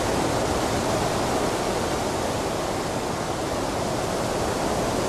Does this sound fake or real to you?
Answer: real